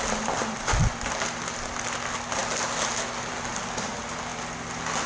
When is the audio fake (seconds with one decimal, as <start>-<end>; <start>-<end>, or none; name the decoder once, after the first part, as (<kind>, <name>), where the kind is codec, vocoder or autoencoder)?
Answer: none